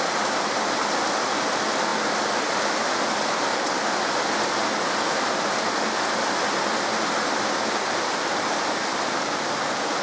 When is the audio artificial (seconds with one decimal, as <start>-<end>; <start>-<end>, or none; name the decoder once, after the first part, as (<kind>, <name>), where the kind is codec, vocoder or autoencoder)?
none